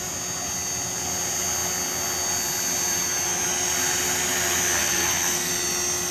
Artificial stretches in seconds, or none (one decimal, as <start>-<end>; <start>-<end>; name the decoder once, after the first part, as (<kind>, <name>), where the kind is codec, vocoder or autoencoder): 4.8-5.5 (codec, SNAC)